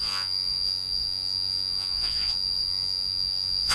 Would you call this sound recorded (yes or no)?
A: no